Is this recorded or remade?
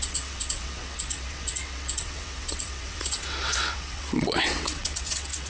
remade